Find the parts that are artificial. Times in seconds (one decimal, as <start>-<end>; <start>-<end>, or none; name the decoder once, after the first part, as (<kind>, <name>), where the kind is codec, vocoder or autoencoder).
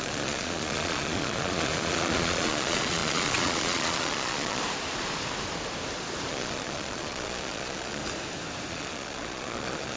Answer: 0.0-4.6 (vocoder, Vocos); 6.3-8.0; 8.7-10.0